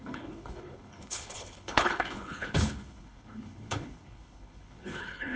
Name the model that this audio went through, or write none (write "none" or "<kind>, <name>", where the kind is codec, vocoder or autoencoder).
codec, HILCodec